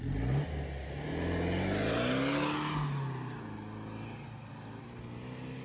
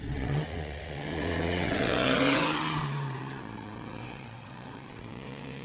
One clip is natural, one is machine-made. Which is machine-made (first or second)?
second